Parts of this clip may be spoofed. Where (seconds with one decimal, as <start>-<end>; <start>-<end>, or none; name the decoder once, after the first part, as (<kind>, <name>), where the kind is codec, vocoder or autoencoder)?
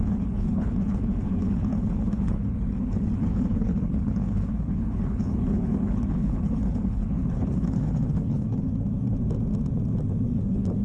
0.0-8.7 (codec, HILCodec); 10.4-10.8